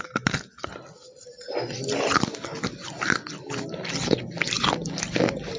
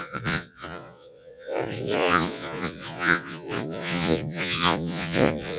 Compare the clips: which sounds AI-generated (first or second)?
second